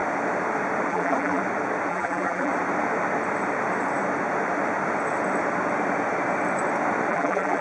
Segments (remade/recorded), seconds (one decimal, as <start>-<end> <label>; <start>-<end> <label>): 0.0-0.9 recorded; 0.9-1.4 remade; 1.4-1.9 recorded; 1.9-2.5 remade; 2.5-7.1 recorded; 7.1-7.6 remade